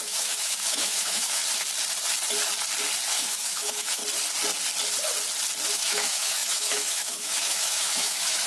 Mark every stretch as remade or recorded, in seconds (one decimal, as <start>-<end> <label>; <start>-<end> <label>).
0.0-1.4 remade; 1.4-3.1 recorded; 3.1-4.0 remade; 4.0-5.7 recorded; 5.7-8.5 remade